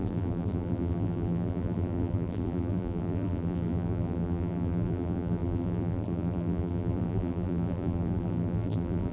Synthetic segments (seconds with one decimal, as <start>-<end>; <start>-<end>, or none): 0.0-9.1